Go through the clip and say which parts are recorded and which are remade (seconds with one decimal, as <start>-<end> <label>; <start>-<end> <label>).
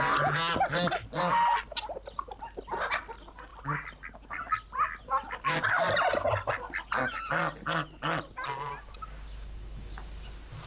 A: 0.0-10.7 recorded